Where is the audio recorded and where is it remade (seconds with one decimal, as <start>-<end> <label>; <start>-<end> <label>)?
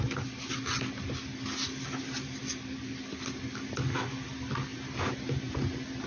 0.0-6.1 recorded